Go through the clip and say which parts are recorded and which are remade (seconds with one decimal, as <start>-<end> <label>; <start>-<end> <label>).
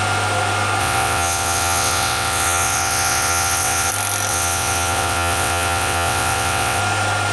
0.0-0.8 recorded; 0.8-3.9 remade; 3.9-4.3 recorded; 4.3-6.8 remade; 6.8-7.3 recorded